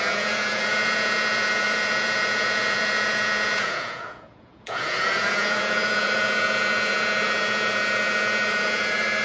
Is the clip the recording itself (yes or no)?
no